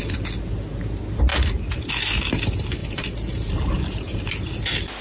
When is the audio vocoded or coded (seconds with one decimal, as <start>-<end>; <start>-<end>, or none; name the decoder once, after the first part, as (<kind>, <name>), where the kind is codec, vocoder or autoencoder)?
1.3-1.9 (vocoder, BigVGAN v2); 2.8-4.3